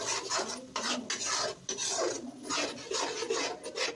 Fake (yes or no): no